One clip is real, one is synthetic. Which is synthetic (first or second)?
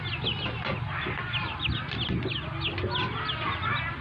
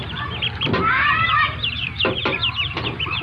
second